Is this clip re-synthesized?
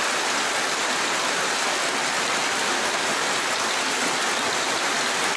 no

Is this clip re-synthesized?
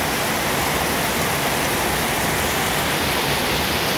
no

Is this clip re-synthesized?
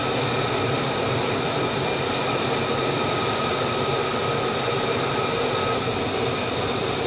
no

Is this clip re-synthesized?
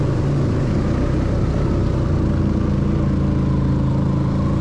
no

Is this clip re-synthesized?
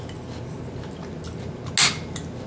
no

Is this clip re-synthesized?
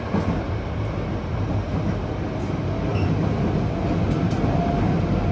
no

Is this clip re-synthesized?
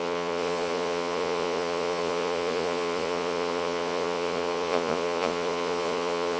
yes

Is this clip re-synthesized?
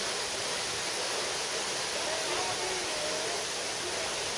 no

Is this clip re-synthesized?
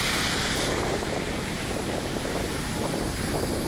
yes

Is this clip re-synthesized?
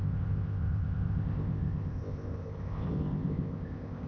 yes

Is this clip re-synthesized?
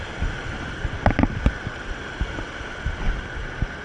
no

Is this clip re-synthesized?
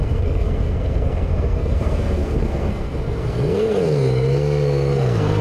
yes